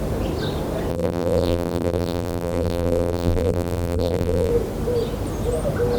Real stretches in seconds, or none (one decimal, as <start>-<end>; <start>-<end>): 0.0-0.9; 4.5-6.0